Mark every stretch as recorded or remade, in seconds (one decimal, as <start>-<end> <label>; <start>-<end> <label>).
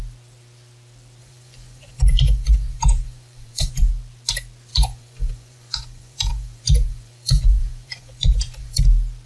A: 0.0-1.2 recorded; 1.2-3.9 remade; 3.9-4.7 recorded; 4.7-8.8 remade; 8.8-9.3 recorded